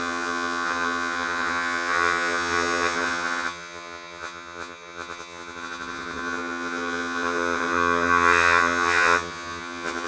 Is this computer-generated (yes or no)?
yes